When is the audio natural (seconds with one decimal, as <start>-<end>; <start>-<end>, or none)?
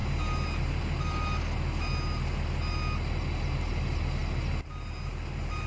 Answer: 0.0-5.7